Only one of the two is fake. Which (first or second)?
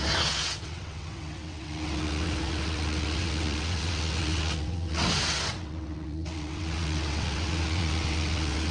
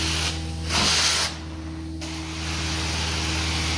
first